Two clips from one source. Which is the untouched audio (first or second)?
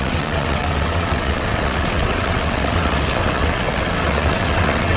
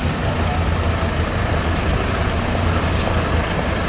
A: second